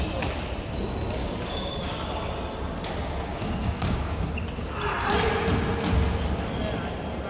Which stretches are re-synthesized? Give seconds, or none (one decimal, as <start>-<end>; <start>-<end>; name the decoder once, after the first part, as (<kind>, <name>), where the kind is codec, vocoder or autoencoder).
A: 1.2-2.4 (codec, DAC); 3.3-4.3